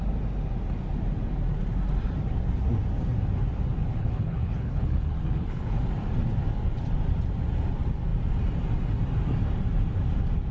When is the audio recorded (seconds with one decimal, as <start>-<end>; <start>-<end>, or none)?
0.0-4.0; 5.8-10.5